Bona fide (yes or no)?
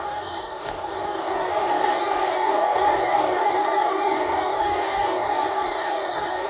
no